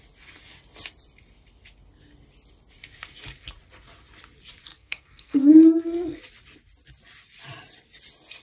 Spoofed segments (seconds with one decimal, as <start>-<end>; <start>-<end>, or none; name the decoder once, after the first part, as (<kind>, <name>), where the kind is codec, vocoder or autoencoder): 4.7-6.2 (codec, SNAC)